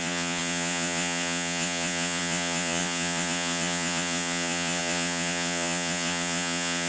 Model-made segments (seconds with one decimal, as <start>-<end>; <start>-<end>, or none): 0.0-6.9